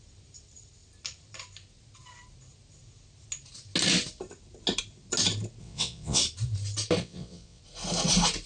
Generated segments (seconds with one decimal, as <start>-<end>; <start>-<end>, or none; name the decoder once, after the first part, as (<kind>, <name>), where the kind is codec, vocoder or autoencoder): 5.6-6.2 (vocoder, WaveNeXt); 7.0-7.6